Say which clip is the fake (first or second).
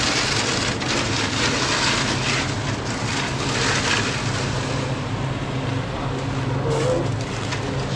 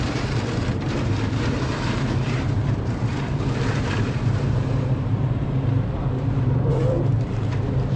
second